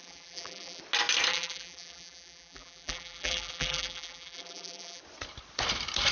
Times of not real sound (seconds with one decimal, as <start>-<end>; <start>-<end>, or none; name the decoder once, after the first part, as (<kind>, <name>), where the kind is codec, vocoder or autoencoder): 0.0-0.8 (vocoder, BigVGAN v2); 1.3-5.0

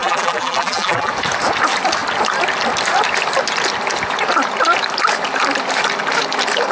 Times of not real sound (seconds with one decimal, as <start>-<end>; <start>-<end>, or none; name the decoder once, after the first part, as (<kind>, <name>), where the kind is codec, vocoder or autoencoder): 0.0-1.1 (vocoder, BigVGAN v2)

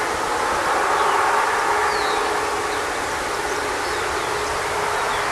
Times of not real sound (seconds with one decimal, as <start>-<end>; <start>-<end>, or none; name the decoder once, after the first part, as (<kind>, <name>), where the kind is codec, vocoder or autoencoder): none